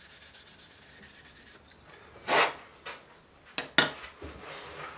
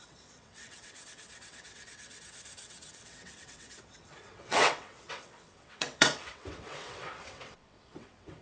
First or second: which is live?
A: first